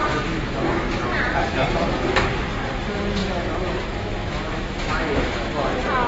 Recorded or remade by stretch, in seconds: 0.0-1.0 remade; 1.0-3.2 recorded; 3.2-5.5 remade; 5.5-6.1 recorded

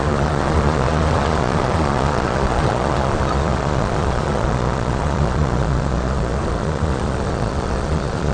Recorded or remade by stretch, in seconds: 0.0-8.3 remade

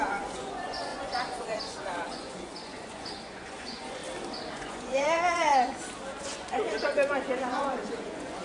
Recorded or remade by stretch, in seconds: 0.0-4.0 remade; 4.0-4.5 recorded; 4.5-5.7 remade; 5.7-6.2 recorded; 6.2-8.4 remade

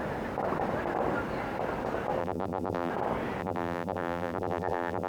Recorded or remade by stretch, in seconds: 0.0-2.2 recorded; 2.2-2.9 remade; 2.9-3.4 recorded; 3.4-5.1 remade

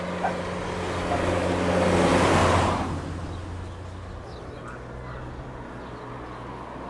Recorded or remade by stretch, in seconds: 0.0-6.9 recorded

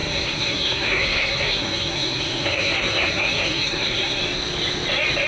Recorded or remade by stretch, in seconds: 0.0-4.2 remade; 4.2-5.3 recorded

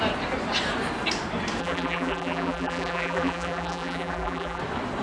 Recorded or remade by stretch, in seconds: 0.0-1.6 recorded; 1.6-4.6 remade; 4.6-5.0 recorded

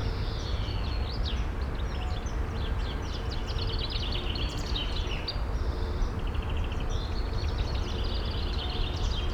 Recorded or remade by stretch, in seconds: 0.0-9.3 recorded